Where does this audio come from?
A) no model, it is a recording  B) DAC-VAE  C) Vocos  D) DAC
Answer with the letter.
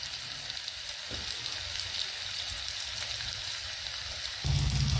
A